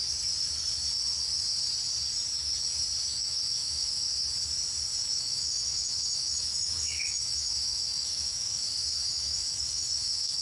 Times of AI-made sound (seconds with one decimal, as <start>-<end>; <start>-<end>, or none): 3.0-4.1; 4.9-10.4